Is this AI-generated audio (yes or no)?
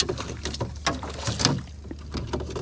no